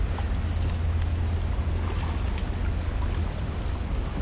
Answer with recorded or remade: recorded